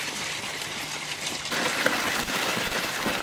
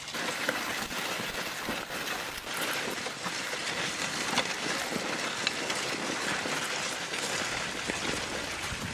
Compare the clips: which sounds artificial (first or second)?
first